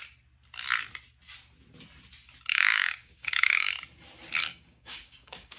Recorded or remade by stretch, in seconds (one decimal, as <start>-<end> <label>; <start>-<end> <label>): 0.0-2.5 recorded; 2.5-3.7 remade; 3.7-4.5 recorded; 4.5-5.6 remade